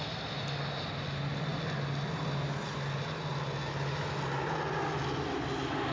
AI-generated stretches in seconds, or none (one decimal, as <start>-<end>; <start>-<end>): none